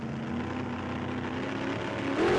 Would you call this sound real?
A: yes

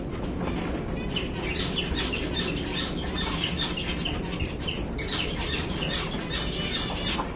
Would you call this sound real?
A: yes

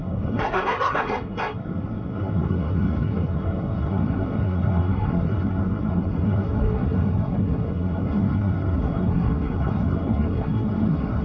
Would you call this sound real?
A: no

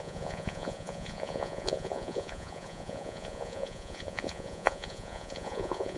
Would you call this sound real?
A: no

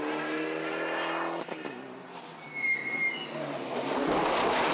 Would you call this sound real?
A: yes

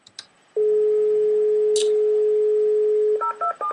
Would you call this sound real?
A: yes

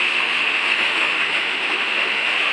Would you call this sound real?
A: no